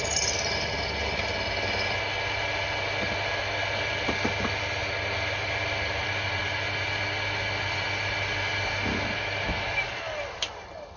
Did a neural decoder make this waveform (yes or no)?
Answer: no